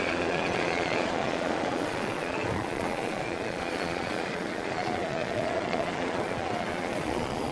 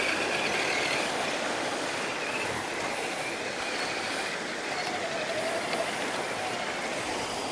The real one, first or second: second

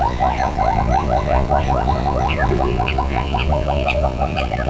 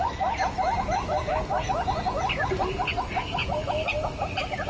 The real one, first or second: second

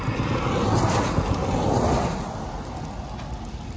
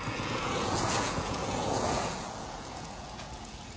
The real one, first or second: first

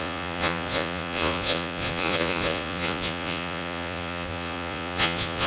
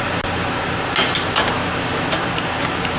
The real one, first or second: second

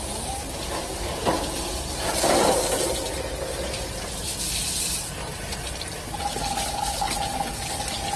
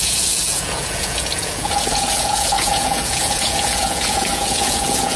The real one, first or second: first